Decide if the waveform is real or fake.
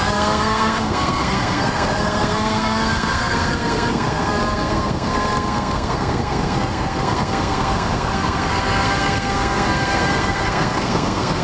fake